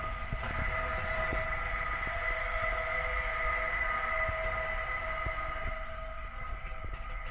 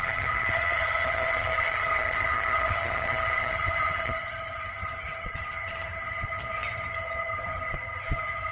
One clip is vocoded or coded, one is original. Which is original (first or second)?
first